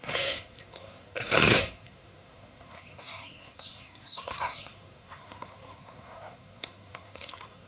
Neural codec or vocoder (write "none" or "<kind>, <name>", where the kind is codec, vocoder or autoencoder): codec, SNAC